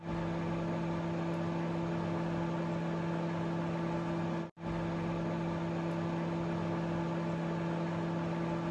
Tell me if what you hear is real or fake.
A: real